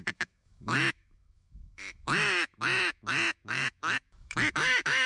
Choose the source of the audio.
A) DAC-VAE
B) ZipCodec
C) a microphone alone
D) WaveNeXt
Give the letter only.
A